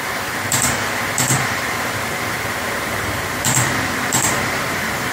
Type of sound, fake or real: fake